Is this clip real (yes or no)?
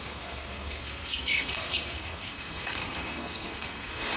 no